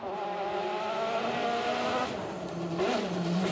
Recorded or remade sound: recorded